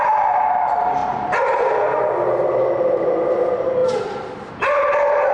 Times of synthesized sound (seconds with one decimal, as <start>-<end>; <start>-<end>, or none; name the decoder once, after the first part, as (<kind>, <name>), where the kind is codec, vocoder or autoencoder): none